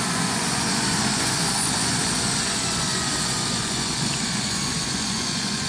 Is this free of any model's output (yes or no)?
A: no